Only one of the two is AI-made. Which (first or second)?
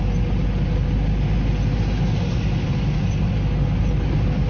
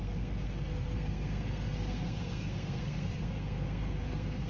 second